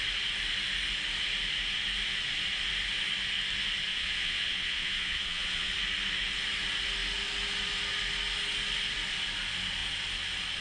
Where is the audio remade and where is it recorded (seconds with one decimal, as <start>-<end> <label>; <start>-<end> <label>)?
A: 0.0-3.9 recorded; 3.9-5.7 remade; 5.7-10.6 recorded

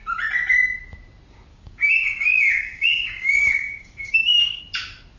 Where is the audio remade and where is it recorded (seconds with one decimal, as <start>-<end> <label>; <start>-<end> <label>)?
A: 0.0-1.5 recorded; 1.5-4.6 remade; 4.6-5.2 recorded

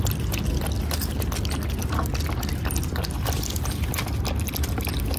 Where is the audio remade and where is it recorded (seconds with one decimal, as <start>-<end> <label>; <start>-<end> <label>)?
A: 0.0-5.2 recorded

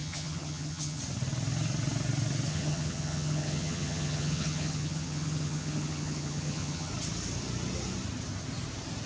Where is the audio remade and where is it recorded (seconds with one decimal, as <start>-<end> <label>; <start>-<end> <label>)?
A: 0.0-1.0 remade; 1.0-2.5 recorded; 2.5-6.9 remade; 6.9-9.1 recorded

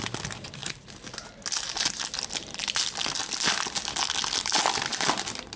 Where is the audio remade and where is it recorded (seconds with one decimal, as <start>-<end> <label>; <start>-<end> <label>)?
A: 0.0-5.6 recorded

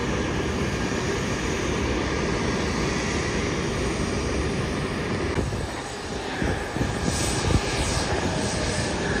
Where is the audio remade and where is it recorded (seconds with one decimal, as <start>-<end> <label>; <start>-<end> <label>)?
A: 0.0-9.2 recorded